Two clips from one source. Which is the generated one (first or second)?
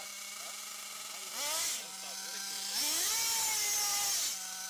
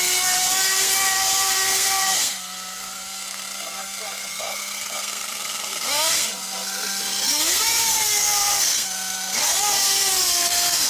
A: second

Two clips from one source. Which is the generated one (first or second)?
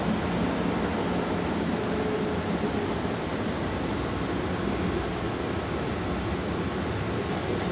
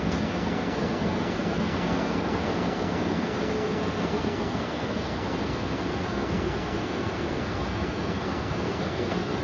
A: second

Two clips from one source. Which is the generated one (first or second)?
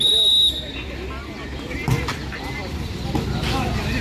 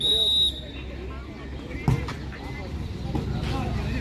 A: first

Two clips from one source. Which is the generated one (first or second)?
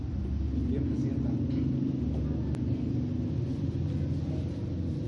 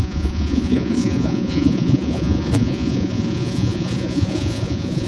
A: second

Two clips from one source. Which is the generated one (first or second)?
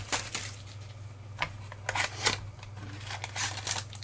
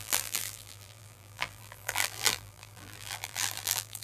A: second